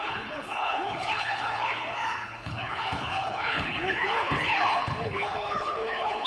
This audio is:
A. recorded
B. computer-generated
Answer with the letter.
B